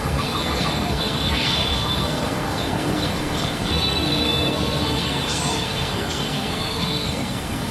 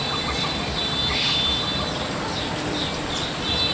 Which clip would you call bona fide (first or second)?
second